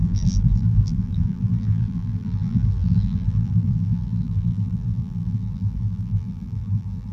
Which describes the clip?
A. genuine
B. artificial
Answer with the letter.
B